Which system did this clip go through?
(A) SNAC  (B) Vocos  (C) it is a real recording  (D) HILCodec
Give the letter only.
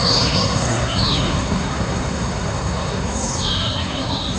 A